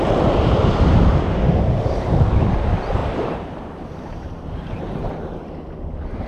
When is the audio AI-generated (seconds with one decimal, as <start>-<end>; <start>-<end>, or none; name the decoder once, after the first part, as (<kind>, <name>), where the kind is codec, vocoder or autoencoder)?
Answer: 3.0-5.5 (vocoder, BigVGAN v2)